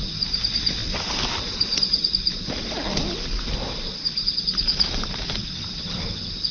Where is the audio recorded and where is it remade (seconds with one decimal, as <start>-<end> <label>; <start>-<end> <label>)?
0.0-0.8 recorded; 0.8-1.3 remade; 1.3-5.4 recorded; 5.4-6.0 remade; 6.0-6.5 recorded